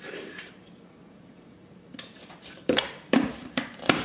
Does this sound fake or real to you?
fake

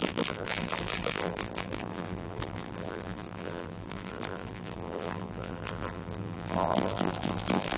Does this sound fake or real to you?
fake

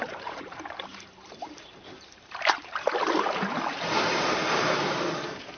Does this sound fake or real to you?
fake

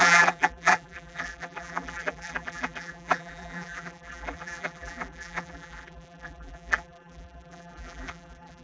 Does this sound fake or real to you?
fake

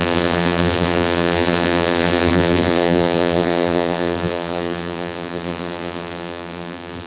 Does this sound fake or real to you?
fake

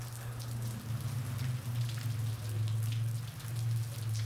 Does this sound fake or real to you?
real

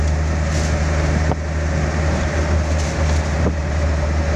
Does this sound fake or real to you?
real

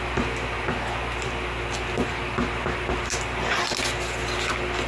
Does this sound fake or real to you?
real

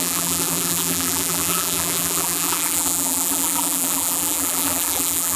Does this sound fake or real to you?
fake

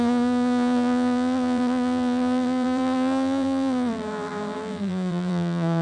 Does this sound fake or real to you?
fake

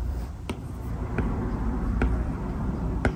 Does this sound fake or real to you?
fake